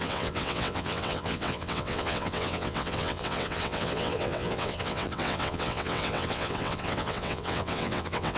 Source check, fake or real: fake